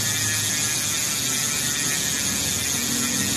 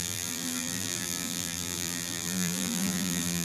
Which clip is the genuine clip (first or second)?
first